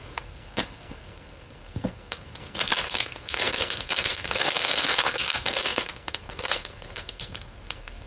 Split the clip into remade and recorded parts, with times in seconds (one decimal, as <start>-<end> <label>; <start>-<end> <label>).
0.0-8.1 remade